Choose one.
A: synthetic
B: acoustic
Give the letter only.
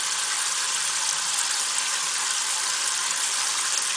B